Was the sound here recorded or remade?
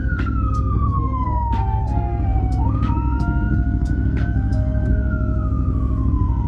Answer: remade